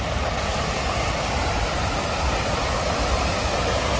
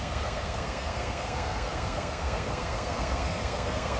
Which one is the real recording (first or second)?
first